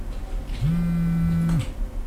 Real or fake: real